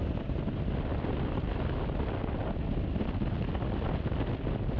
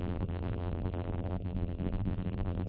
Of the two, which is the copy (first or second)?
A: second